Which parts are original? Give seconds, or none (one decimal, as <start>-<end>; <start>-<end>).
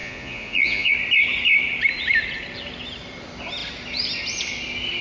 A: 0.9-5.0